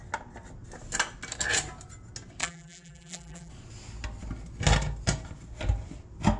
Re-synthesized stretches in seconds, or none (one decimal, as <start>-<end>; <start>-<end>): 2.4-3.5